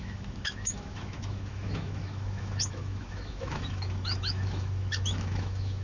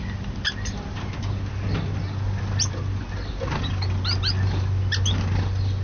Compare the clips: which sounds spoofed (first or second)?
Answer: first